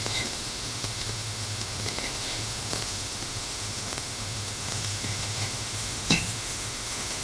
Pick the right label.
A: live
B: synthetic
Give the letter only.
B